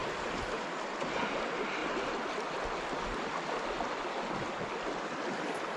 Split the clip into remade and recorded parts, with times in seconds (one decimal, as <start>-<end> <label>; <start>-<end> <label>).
0.0-5.8 recorded